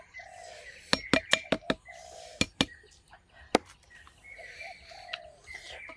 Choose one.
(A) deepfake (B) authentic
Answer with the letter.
B